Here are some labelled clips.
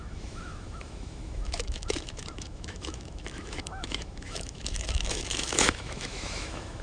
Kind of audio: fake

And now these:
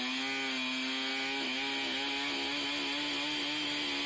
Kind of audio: real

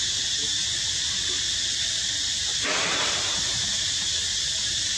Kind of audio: real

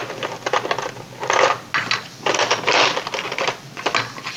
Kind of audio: real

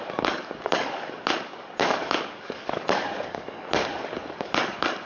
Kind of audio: fake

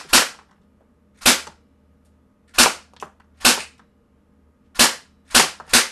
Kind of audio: real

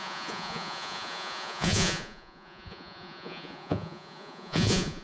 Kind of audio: fake